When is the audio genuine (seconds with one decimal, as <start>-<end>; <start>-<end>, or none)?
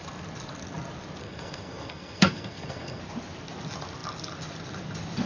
0.0-1.2; 3.0-5.3